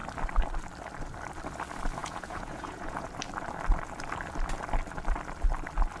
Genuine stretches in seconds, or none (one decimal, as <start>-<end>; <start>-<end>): 0.0-2.0; 3.1-6.0